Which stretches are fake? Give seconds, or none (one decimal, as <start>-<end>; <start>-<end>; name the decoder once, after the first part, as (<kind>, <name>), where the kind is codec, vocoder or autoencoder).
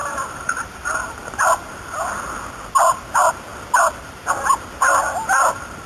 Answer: 0.0-2.4 (vocoder, BigVGAN v2)